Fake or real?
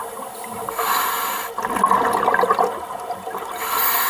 real